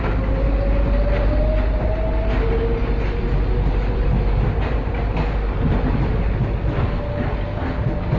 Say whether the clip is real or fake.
real